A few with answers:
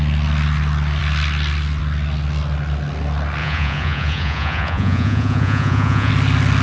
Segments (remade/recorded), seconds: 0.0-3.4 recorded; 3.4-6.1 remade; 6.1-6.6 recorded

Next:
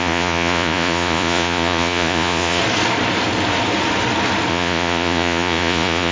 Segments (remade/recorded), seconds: 0.0-2.6 remade; 2.6-4.5 recorded; 4.5-6.1 remade

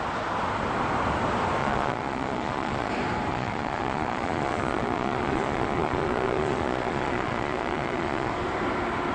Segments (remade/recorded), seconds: 0.0-1.6 recorded; 1.6-2.9 remade; 2.9-3.3 recorded; 3.3-8.3 remade; 8.3-9.1 recorded

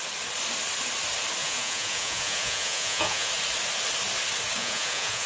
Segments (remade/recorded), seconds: 0.0-1.4 recorded; 1.4-3.3 remade; 3.3-4.6 recorded; 4.6-5.3 remade

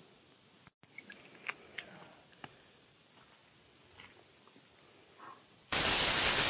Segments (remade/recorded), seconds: 0.0-6.5 recorded

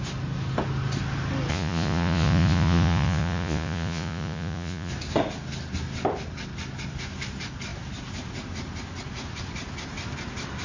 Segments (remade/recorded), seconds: 0.0-1.5 recorded; 1.5-4.9 remade; 4.9-10.6 recorded

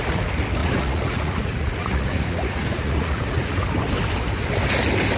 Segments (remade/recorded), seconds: 0.0-0.6 recorded; 0.6-3.7 remade; 3.7-5.2 recorded

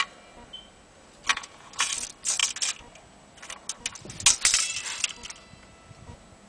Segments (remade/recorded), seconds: 0.0-1.3 recorded; 1.3-1.9 remade; 1.9-6.5 recorded